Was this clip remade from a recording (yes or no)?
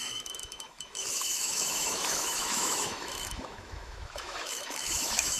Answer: yes